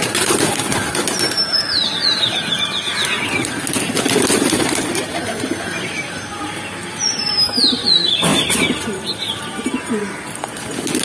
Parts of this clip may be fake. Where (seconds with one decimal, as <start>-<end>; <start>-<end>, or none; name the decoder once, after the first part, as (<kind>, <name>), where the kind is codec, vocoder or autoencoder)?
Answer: none